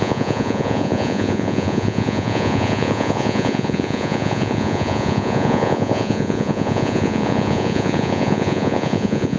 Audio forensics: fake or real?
fake